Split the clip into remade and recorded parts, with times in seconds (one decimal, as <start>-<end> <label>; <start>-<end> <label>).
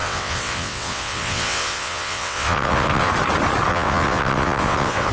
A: 0.0-3.1 remade; 3.1-3.7 recorded; 3.7-5.1 remade